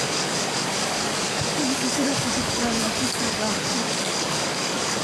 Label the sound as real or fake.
fake